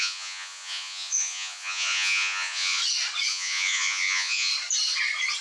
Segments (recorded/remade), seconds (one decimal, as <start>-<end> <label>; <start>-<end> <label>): 0.0-2.8 remade; 2.8-3.3 recorded; 3.3-4.5 remade; 4.5-5.4 recorded

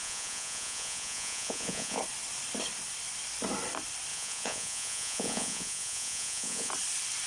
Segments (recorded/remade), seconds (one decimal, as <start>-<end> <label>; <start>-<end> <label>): 0.0-2.0 remade; 2.0-4.1 recorded; 4.1-6.7 remade; 6.7-7.3 recorded

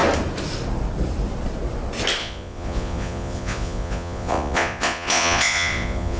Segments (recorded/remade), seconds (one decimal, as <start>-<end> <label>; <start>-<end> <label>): 0.0-2.2 recorded; 2.2-6.2 remade

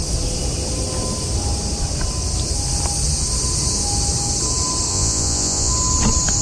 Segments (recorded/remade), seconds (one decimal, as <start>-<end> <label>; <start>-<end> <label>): 0.0-4.9 recorded; 4.9-5.7 remade; 5.7-6.4 recorded

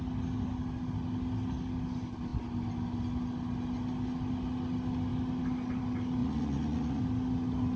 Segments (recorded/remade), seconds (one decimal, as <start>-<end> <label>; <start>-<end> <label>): 0.0-6.2 recorded; 6.2-7.0 remade; 7.0-7.8 recorded